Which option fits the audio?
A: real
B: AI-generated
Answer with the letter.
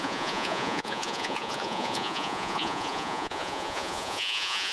B